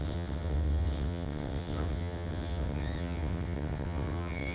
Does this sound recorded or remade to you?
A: remade